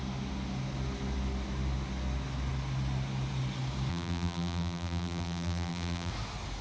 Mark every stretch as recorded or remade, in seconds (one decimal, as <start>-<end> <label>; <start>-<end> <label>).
0.0-3.9 recorded; 3.9-6.1 remade; 6.1-6.6 recorded